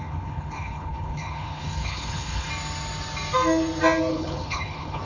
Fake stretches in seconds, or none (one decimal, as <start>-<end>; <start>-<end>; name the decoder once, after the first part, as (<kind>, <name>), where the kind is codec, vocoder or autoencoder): 0.0-2.5 (codec, HILCodec); 4.1-5.0